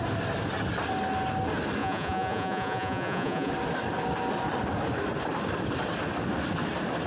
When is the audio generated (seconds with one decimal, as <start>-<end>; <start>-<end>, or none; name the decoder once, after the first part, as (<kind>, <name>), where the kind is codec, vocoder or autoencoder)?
1.8-3.5 (vocoder, Vocos)